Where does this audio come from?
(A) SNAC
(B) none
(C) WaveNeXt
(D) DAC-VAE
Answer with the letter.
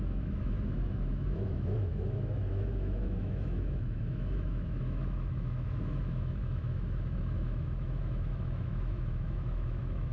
D